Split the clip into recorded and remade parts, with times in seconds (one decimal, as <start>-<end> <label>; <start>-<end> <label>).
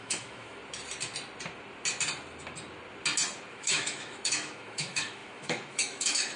0.0-0.6 remade; 0.6-3.5 recorded; 3.5-6.4 remade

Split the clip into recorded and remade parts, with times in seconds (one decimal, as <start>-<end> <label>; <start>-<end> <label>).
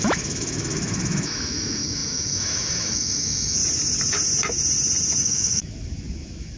0.0-3.6 remade; 3.6-5.2 recorded; 5.2-6.6 remade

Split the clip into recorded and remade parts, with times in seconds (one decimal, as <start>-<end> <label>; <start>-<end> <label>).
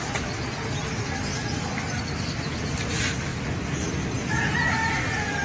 0.0-5.4 recorded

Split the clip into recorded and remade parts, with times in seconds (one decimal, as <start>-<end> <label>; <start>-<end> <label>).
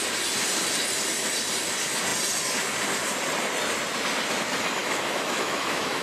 0.0-4.8 recorded; 4.8-6.0 remade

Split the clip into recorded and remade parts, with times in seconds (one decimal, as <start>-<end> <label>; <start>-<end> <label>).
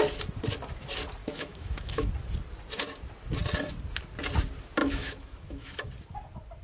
0.0-1.2 recorded; 1.2-2.1 remade; 2.1-4.8 recorded; 4.8-5.9 remade; 5.9-6.6 recorded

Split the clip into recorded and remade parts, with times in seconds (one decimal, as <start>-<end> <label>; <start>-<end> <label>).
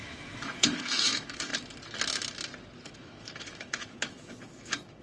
0.0-1.5 remade; 1.5-2.8 recorded; 2.8-5.0 remade